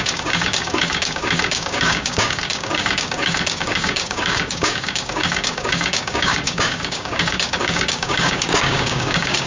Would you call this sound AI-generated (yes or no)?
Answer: yes